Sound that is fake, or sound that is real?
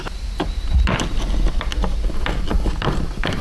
real